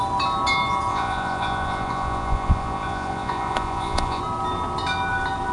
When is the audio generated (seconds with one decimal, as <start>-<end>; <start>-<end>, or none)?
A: 0.9-4.2